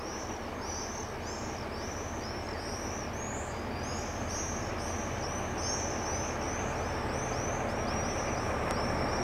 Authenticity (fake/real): real